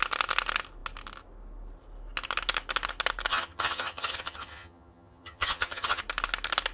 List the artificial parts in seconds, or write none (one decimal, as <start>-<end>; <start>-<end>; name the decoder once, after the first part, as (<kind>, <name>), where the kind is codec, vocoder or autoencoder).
3.3-6.0 (vocoder, HiFi-GAN)